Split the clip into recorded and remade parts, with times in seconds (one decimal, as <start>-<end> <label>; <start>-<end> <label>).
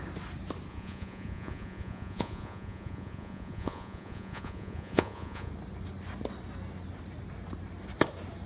0.0-0.7 recorded; 0.7-5.5 remade; 5.5-8.5 recorded